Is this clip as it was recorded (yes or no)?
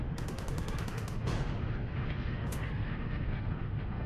no